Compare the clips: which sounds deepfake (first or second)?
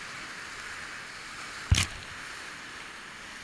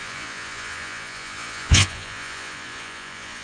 second